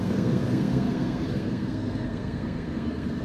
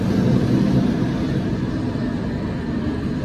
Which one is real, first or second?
second